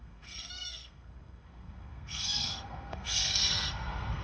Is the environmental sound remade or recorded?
remade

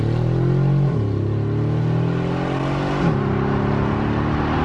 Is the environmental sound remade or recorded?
recorded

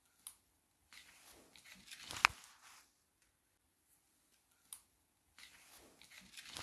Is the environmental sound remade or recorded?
recorded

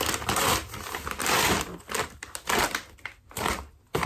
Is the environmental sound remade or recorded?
recorded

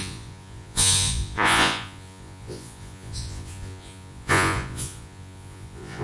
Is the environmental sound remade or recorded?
remade